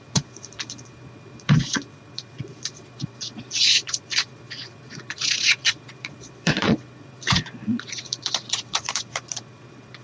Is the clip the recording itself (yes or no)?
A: no